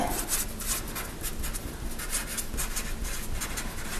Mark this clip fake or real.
real